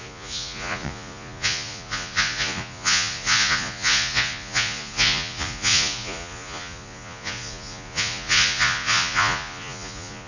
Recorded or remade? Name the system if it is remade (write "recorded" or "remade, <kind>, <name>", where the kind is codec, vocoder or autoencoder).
remade, vocoder, Vocos